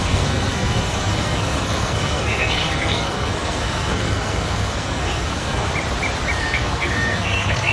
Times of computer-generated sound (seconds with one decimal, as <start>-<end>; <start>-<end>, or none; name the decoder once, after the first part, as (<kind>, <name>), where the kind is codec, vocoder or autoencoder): 0.0-5.7 (codec, SNAC); 6.4-7.7